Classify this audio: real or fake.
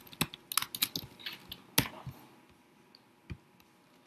real